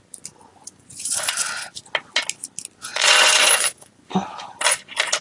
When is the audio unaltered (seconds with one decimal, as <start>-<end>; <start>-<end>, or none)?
0.0-0.5; 1.8-2.8; 4.1-5.2